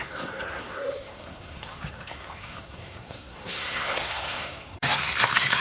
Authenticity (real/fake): fake